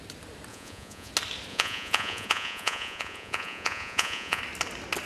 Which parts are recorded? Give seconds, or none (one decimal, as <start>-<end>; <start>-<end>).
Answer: 0.0-0.5; 1.1-1.5; 4.4-5.1